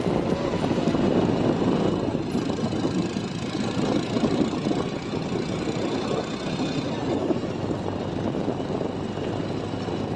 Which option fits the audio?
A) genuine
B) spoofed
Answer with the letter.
A